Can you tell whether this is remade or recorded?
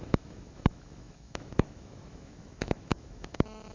remade